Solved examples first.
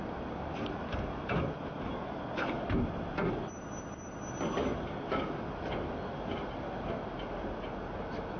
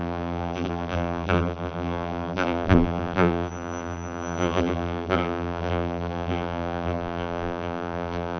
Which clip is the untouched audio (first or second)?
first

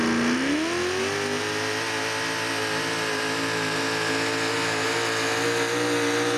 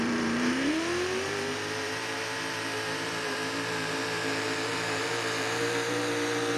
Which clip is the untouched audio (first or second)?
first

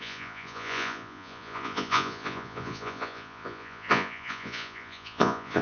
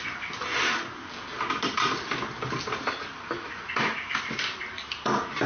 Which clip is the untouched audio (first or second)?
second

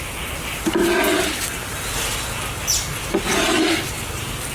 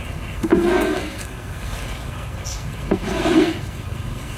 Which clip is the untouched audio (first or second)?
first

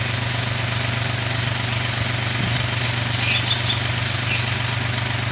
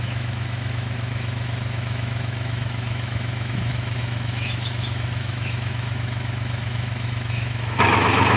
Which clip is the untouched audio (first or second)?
first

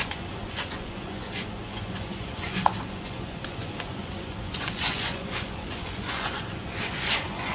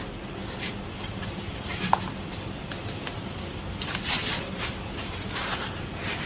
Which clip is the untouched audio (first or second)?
second